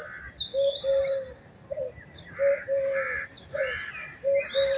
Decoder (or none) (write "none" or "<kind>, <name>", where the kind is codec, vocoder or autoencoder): none